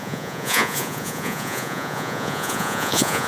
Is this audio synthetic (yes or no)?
yes